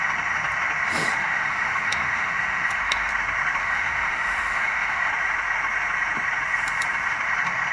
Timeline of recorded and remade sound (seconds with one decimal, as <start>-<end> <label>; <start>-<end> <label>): 0.0-1.2 recorded; 1.2-3.1 remade; 3.1-3.6 recorded; 3.6-5.1 remade; 5.1-7.7 recorded